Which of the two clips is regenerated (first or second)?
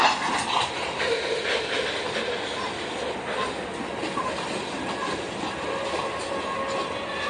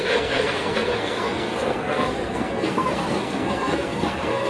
second